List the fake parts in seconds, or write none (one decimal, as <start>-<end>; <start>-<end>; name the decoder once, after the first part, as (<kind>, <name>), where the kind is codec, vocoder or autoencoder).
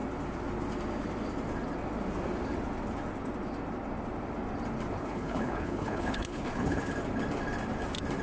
5.0-6.8 (codec, HILCodec)